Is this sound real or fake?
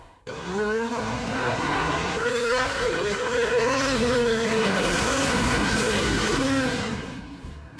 fake